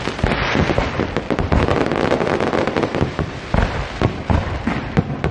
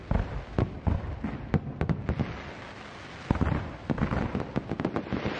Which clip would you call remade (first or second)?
first